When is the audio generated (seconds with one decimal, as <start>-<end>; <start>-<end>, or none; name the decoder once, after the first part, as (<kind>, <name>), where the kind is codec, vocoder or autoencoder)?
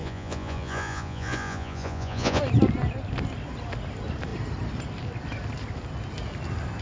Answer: 0.0-2.4 (vocoder, Vocos)